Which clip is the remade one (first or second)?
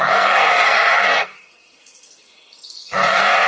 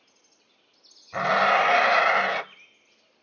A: first